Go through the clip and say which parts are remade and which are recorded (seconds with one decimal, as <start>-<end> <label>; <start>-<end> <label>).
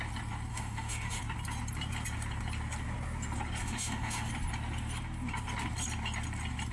0.0-0.5 recorded; 0.5-1.2 remade; 1.2-3.6 recorded; 3.6-4.3 remade; 4.3-6.7 recorded